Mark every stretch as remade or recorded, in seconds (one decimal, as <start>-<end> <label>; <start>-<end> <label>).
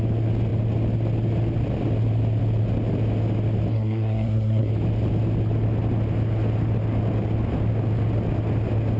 0.0-3.7 recorded; 3.7-4.7 remade; 4.7-9.0 recorded